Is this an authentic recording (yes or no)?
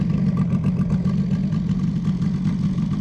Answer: yes